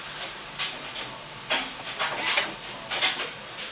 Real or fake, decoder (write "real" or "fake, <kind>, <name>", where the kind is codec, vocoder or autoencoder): real